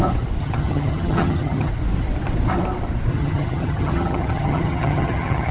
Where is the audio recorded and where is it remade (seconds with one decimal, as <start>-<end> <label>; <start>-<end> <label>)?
0.0-0.4 recorded; 0.4-1.7 remade; 1.7-3.1 recorded; 3.1-5.5 remade